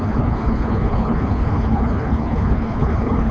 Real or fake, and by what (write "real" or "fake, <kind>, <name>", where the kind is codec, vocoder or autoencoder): fake, codec, HILCodec